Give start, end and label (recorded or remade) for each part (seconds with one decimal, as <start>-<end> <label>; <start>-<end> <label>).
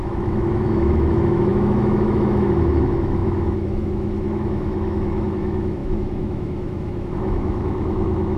0.0-8.4 remade